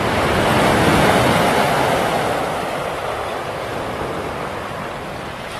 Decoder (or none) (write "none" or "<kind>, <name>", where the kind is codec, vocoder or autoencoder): none